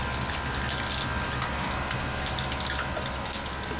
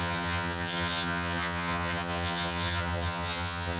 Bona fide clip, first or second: first